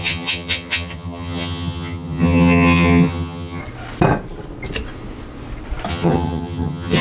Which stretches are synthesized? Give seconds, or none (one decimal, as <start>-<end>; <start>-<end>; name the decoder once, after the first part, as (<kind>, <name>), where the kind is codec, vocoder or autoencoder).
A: 0.0-3.6 (vocoder, HiFi-GAN); 5.9-7.0